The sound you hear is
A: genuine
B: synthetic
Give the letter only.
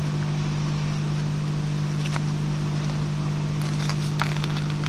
A